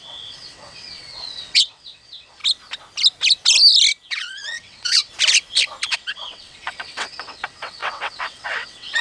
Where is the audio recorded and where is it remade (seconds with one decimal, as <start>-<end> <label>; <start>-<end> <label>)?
0.0-2.4 remade; 2.4-4.1 recorded; 4.1-5.1 remade; 5.1-5.9 recorded; 5.9-9.0 remade